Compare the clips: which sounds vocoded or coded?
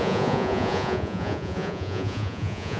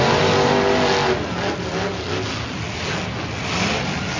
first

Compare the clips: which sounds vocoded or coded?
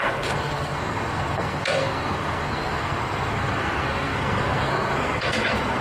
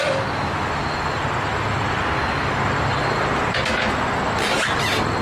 first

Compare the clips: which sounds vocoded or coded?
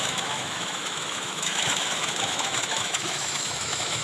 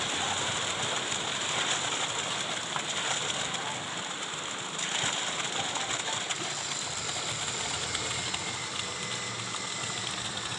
first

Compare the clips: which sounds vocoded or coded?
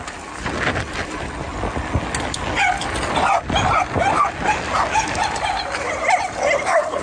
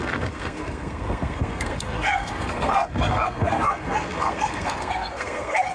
second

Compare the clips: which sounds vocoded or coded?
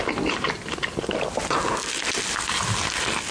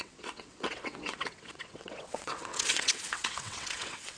second